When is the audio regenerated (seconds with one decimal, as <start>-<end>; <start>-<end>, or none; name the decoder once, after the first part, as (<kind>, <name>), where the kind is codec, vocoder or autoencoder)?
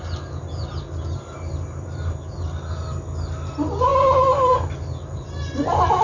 none